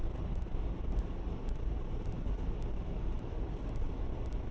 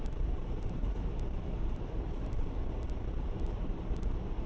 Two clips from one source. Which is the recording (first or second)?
first